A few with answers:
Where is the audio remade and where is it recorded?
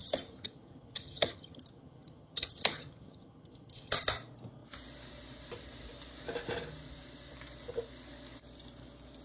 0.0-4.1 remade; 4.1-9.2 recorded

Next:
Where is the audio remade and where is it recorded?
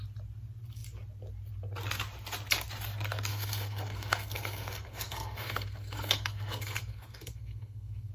0.0-3.3 recorded; 3.3-8.1 remade